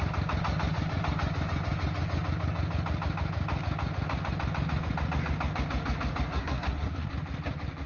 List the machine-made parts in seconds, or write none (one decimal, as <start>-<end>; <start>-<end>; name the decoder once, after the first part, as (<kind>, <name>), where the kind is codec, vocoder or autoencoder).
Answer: 6.3-7.1 (codec, SNAC)